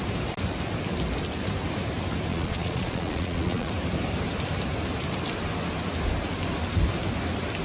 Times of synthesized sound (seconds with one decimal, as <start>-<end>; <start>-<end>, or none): 2.3-3.7